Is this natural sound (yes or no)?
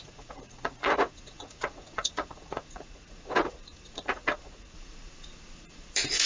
no